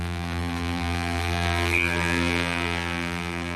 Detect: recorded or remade remade